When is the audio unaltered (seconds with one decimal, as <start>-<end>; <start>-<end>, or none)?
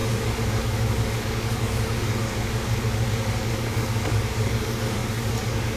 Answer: none